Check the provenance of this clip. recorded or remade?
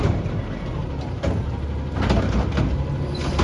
recorded